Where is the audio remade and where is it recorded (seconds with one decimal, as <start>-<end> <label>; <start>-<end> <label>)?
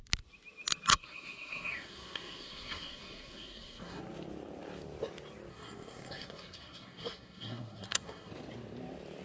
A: 0.0-0.9 recorded; 0.9-4.0 remade; 4.0-5.5 recorded; 5.5-8.3 remade; 8.3-9.2 recorded